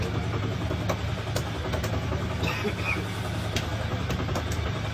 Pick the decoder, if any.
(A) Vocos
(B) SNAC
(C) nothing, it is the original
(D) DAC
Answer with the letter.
C